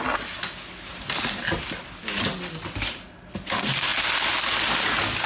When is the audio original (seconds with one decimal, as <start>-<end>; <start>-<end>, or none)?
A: 0.0-5.3